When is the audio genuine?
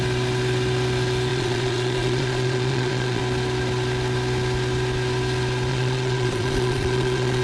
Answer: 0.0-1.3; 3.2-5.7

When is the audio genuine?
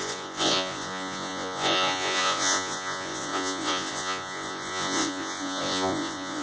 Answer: none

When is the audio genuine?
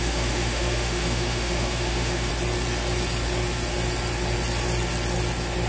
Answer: 2.3-5.7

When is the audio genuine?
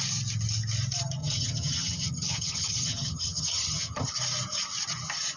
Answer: 0.0-1.2; 4.1-5.4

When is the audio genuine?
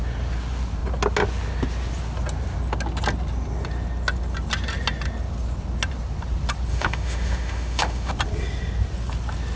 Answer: 0.0-6.7; 8.1-9.6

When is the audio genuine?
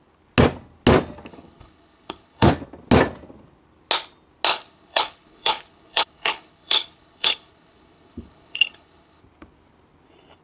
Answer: 0.0-1.3; 2.5-4.5; 9.2-10.4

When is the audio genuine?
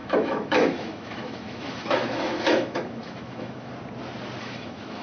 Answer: 3.7-4.4